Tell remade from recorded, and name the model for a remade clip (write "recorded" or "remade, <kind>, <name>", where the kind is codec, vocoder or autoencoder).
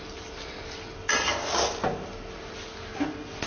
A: recorded